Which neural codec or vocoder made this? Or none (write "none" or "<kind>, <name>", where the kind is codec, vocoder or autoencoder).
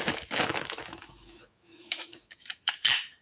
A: autoencoder, DAC-VAE